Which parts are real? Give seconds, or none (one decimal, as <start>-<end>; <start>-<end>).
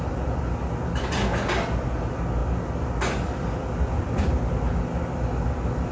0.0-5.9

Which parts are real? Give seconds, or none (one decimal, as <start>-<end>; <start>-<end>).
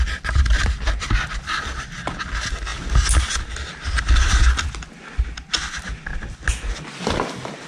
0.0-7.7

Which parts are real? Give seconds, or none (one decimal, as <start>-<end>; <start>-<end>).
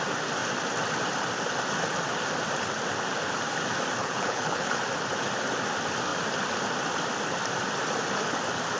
0.0-4.0; 4.8-8.8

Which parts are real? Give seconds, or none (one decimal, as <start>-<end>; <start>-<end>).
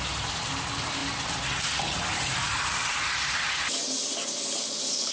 0.0-5.1